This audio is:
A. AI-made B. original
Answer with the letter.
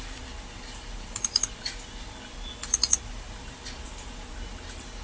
B